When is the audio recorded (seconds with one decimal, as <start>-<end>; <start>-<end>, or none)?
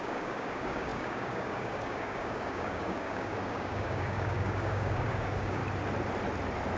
5.6-6.8